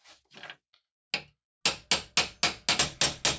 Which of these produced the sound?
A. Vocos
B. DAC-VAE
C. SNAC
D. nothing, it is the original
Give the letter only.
D